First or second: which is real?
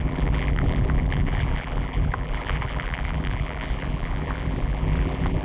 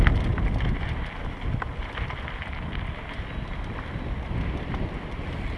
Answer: second